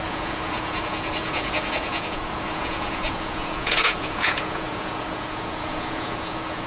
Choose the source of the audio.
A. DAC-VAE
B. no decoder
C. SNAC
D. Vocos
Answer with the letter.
D